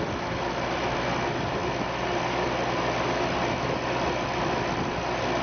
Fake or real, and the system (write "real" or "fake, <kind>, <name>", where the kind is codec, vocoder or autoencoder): real